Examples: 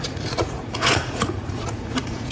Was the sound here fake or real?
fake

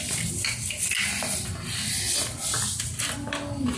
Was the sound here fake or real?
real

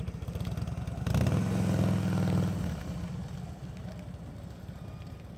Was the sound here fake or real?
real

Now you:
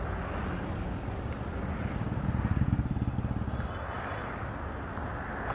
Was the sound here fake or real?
real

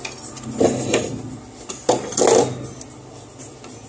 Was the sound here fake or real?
real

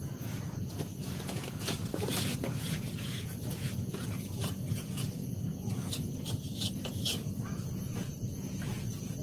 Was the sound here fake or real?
fake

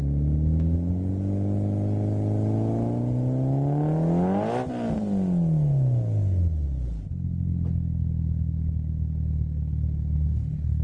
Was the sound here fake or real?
real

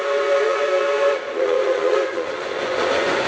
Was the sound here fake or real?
fake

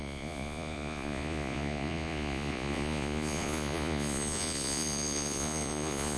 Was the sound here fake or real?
fake